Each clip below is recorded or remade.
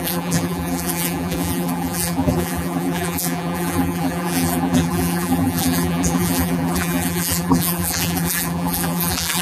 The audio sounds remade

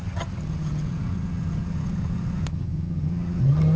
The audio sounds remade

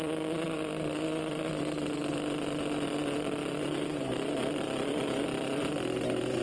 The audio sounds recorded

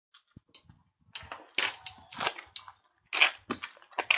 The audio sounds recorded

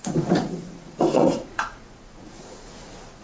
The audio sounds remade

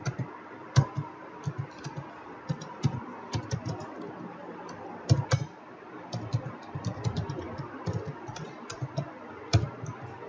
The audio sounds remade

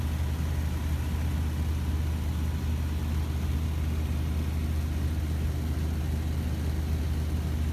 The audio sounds recorded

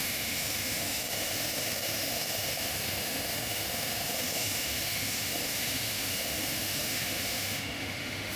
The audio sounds remade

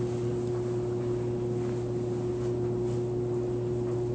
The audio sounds recorded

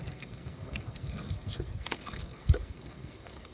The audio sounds remade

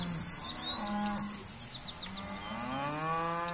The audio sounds recorded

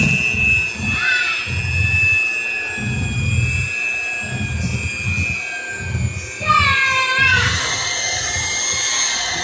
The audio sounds recorded